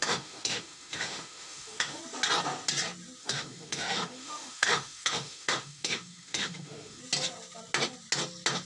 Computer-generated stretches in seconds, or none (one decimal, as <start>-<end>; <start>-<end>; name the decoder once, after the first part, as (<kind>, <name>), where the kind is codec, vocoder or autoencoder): 0.0-2.0 (autoencoder, DAC-VAE); 3.2-7.0